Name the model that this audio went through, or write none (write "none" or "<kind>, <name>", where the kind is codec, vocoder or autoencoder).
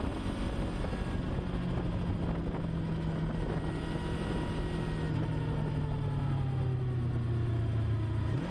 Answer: none